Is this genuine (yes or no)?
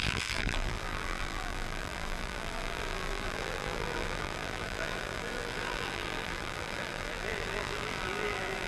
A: no